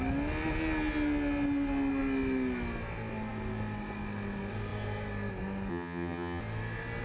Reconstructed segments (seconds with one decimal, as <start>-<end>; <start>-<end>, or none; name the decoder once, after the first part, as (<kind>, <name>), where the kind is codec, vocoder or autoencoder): 5.7-6.4 (vocoder, HiFi-GAN)